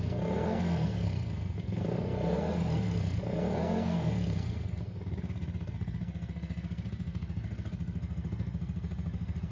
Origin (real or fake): fake